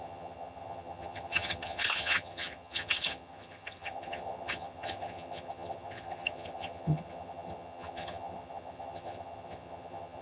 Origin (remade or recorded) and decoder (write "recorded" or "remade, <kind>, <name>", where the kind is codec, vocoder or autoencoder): remade, vocoder, HiFi-GAN